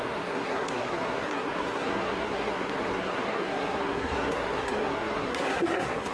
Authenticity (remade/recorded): remade